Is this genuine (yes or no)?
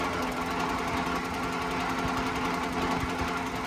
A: yes